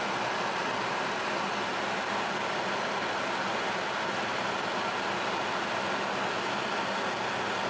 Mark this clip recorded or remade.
recorded